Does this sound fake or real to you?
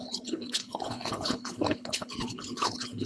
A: fake